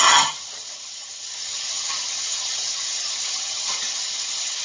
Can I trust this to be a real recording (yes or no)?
no